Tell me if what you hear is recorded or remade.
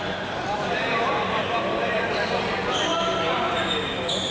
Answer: recorded